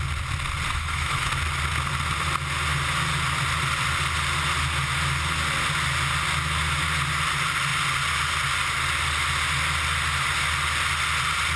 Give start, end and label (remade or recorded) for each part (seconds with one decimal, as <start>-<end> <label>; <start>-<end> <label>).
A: 0.0-0.7 recorded; 0.7-1.3 remade; 1.3-11.6 recorded